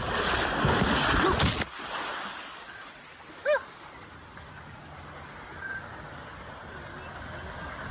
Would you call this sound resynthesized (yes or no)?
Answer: no